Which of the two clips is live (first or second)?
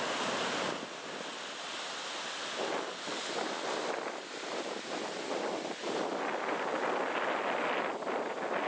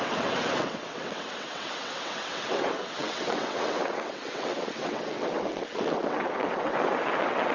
first